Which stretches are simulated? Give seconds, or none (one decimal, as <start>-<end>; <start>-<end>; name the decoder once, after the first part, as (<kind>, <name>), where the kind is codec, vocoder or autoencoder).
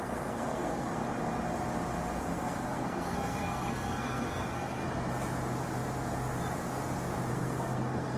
0.0-1.0 (codec, SNAC); 2.2-4.8; 7.3-8.2